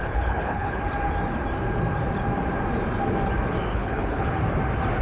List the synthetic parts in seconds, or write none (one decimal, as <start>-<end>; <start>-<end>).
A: 0.0-0.8; 3.7-4.4